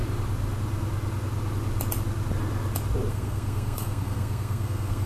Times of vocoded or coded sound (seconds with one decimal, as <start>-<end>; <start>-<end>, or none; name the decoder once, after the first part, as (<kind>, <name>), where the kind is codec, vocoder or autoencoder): 3.1-5.1 (codec, SNAC)